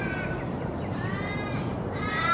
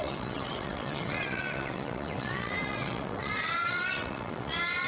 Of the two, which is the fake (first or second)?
second